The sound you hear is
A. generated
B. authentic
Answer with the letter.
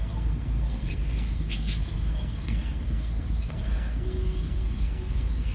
A